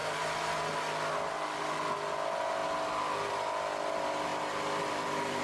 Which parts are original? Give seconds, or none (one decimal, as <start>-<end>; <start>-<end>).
0.0-5.4